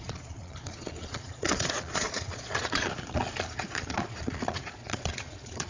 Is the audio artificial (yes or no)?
yes